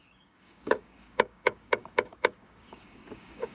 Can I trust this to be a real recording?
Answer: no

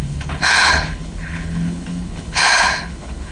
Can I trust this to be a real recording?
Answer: no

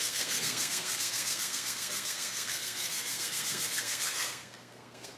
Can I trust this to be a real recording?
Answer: no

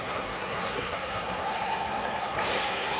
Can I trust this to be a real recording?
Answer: no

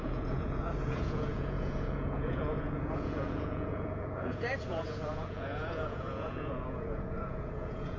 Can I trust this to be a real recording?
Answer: no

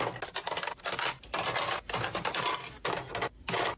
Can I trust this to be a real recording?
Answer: yes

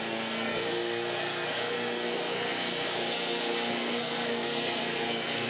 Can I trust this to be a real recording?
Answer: no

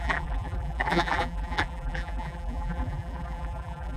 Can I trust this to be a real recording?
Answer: no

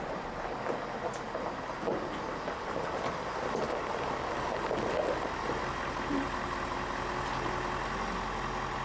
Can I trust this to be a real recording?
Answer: yes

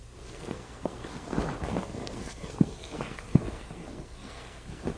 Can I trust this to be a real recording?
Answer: no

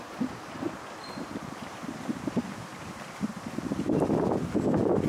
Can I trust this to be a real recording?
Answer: no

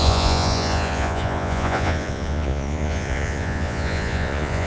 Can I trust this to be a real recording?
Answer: no